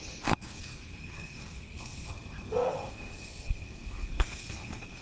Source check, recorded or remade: remade